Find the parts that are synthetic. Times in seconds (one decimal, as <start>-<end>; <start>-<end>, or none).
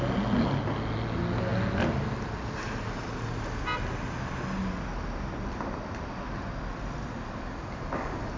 none